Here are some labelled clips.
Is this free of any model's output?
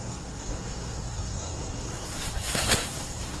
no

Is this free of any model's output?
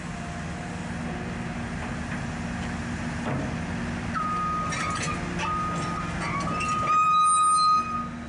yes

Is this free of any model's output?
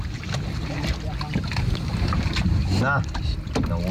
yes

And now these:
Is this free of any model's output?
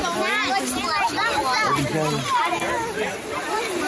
yes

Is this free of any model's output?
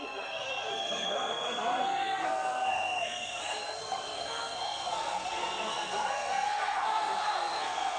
no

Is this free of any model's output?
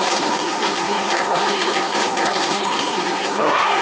no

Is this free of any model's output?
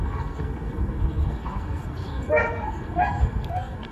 no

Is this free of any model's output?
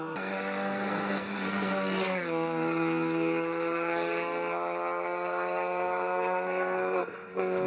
no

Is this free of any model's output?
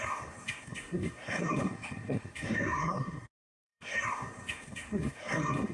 no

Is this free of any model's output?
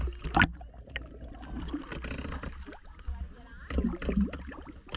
yes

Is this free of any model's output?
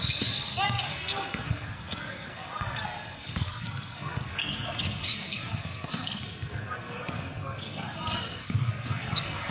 no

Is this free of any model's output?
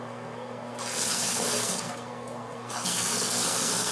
no